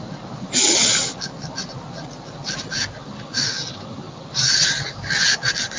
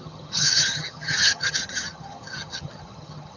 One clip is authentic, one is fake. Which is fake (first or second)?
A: second